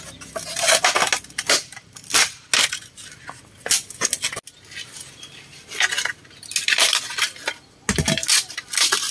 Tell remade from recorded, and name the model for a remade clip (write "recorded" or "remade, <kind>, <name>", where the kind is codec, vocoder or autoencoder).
recorded